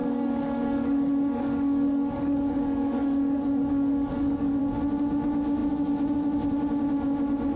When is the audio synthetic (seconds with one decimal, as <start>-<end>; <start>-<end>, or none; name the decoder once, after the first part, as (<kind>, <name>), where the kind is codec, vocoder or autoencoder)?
0.0-4.6 (codec, DAC)